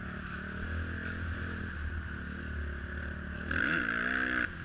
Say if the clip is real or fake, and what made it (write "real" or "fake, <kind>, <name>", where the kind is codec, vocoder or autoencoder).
real